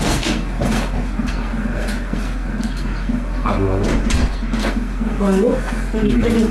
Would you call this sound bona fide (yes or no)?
no